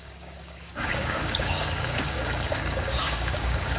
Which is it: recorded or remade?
remade